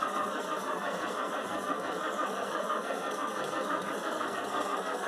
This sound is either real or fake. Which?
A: fake